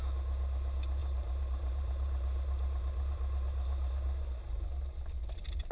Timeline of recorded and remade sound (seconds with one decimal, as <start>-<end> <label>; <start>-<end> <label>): 0.0-1.0 recorded; 1.0-4.4 remade; 4.4-5.7 recorded